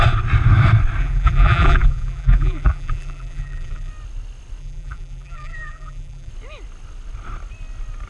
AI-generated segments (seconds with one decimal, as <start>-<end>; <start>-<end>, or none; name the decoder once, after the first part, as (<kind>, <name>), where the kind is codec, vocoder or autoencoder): 1.0-3.9 (vocoder, BigVGAN v2); 4.6-6.3

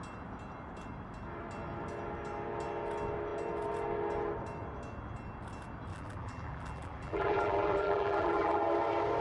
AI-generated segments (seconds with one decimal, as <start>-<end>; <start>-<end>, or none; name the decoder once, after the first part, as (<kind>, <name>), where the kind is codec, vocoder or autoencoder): 5.9-8.6 (vocoder, BigVGAN v2)

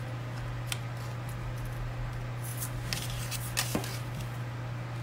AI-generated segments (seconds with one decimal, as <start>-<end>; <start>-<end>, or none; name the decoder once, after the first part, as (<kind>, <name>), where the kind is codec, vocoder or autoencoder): none

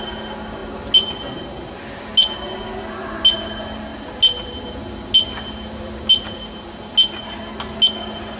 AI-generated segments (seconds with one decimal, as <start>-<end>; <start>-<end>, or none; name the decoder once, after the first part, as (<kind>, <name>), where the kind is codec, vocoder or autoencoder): none

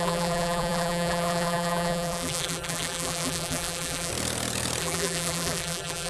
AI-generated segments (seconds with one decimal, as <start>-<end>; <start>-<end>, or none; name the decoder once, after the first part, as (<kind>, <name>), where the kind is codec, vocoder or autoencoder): 0.0-4.1 (vocoder, BigVGAN v2); 4.8-6.1